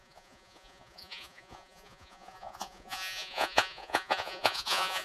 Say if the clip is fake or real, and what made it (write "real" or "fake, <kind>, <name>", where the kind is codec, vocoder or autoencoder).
fake, vocoder, Vocos